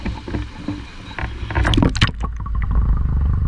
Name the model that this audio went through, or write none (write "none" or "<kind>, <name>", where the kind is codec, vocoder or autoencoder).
none